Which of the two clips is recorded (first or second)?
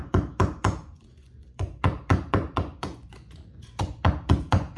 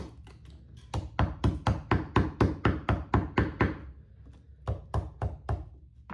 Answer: second